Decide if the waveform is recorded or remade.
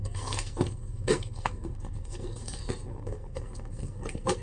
remade